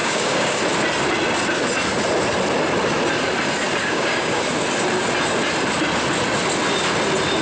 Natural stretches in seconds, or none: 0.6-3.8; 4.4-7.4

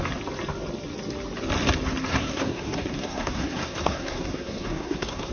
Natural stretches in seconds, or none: 0.0-2.1

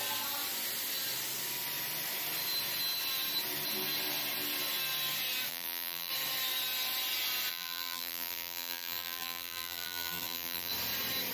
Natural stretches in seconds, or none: 0.0-5.5; 6.1-7.5; 10.7-11.3

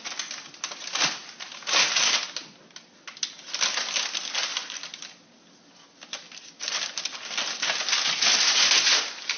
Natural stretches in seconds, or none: 0.0-9.4

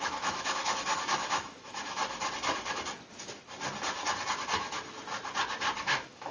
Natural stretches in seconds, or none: 2.0-5.8

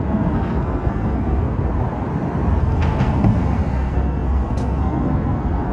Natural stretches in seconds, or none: 1.7-2.6